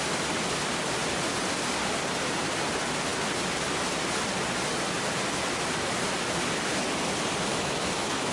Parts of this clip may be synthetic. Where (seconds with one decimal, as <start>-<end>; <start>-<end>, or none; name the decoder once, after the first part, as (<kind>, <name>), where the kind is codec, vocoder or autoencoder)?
7.5-8.3 (autoencoder, DAC-VAE)